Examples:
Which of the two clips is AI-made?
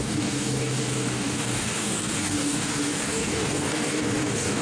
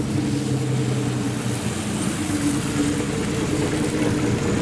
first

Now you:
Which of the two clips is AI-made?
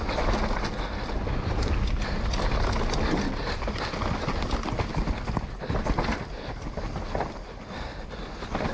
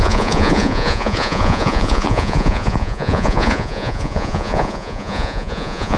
second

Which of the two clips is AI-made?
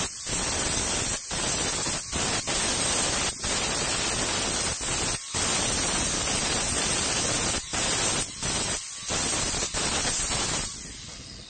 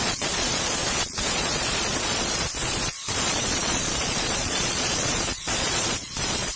second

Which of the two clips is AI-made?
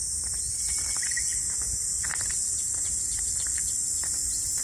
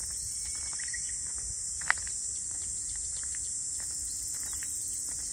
first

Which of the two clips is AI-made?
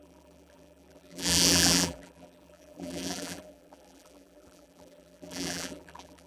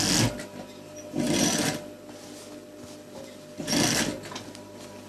first